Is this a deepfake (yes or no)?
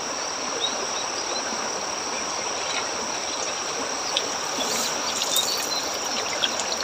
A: no